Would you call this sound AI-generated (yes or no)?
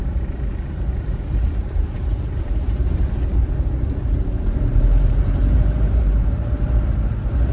yes